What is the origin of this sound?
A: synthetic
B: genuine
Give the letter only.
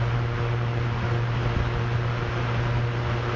B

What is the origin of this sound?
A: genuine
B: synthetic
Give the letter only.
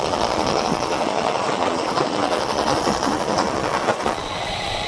B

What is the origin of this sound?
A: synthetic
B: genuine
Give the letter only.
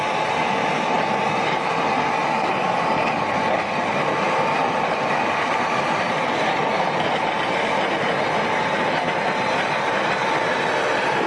B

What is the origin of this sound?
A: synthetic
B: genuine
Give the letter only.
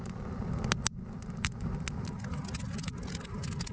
B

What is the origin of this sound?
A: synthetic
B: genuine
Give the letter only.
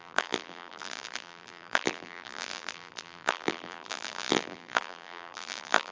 A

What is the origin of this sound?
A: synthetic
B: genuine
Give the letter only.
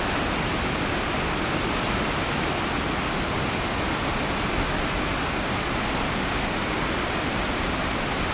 B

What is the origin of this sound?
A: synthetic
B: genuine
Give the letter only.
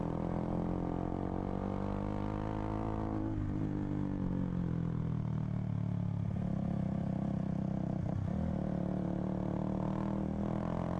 B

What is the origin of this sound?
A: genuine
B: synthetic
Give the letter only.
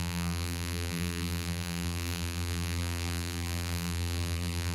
B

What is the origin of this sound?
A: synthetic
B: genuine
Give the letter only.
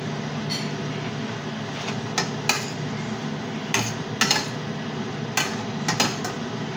B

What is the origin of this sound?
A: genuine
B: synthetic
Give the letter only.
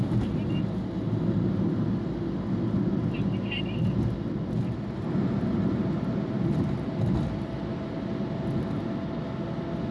A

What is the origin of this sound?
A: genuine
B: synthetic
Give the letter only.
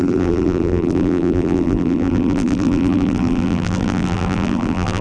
B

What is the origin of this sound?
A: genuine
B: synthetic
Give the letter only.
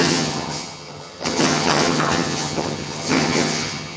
B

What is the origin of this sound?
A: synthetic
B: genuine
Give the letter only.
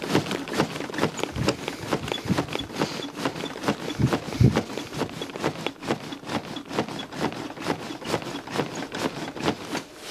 B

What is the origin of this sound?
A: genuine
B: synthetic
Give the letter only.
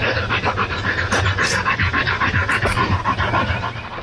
A